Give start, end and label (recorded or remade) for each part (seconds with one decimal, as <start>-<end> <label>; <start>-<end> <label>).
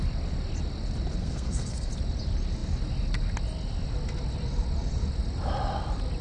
0.0-1.2 recorded; 1.2-1.9 remade; 1.9-6.2 recorded